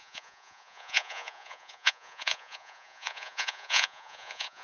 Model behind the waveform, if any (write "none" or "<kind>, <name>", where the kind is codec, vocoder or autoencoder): vocoder, Vocos